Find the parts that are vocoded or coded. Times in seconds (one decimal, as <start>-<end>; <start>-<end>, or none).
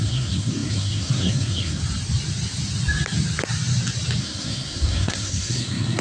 0.0-1.8; 4.2-6.0